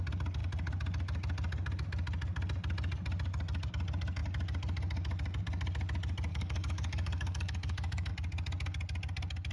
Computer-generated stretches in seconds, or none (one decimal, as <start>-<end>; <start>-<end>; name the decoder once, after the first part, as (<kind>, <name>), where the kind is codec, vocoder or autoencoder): 6.3-8.1 (codec, DAC)